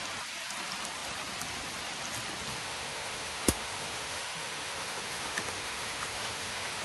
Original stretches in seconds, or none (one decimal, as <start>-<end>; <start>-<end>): 0.0-2.5